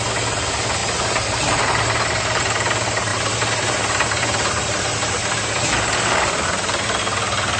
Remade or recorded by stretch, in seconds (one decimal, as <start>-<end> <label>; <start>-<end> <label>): 0.0-3.1 recorded; 3.1-7.0 remade; 7.0-7.6 recorded

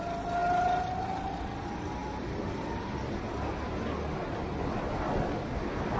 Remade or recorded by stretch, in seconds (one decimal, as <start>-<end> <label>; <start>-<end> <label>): 0.0-6.0 recorded

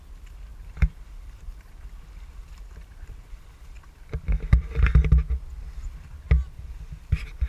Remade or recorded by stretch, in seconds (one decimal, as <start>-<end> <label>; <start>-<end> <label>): 0.0-0.5 recorded; 0.5-4.7 remade; 4.7-7.5 recorded

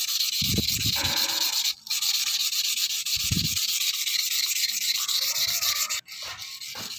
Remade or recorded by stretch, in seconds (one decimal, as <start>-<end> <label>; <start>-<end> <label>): 0.0-0.8 recorded; 0.8-1.7 remade; 1.7-2.4 recorded; 2.4-5.8 remade; 5.8-7.0 recorded

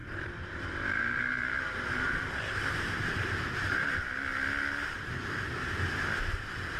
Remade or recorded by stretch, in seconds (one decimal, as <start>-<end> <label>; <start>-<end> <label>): 0.0-4.1 remade; 4.1-6.8 recorded